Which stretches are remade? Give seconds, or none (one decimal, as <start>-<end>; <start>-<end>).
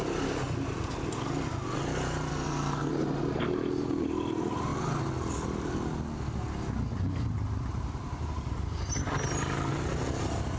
2.3-2.9